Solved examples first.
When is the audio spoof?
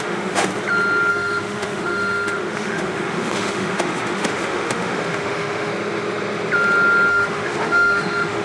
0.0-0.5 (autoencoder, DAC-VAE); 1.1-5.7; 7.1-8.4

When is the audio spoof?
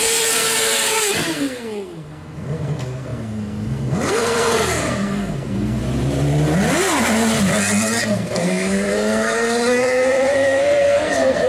0.0-5.8 (codec, SNAC); 8.0-11.5